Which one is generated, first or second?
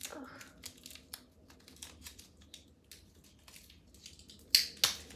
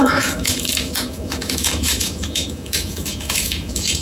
second